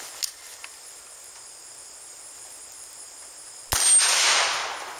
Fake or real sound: real